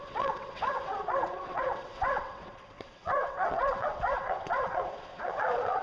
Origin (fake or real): fake